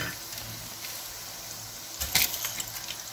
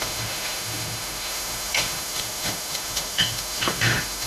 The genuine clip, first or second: first